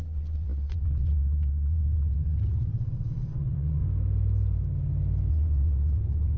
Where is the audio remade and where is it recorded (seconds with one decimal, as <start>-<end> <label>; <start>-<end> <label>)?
0.0-3.8 remade; 3.8-5.3 recorded; 5.3-6.4 remade